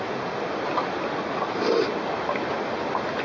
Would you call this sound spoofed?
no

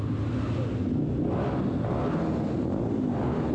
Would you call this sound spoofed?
no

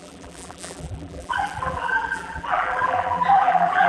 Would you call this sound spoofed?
yes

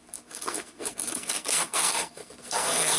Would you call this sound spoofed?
yes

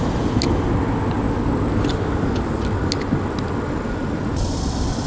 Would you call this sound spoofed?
no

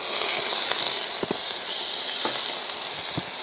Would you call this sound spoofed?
no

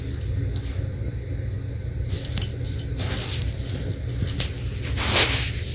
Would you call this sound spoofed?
no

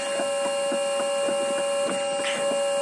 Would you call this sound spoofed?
no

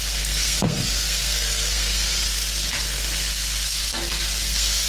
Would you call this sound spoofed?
yes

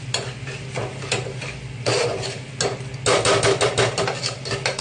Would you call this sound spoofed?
no